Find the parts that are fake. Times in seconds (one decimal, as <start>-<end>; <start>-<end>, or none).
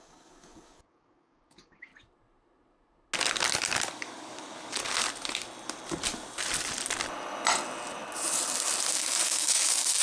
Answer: 0.0-1.9; 3.9-4.8; 8.9-10.0